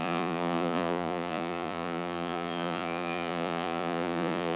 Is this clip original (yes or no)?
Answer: no